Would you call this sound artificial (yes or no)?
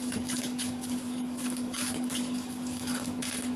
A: yes